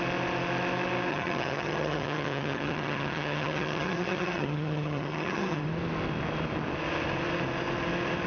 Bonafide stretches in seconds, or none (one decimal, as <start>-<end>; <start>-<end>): 0.0-1.1; 5.6-8.3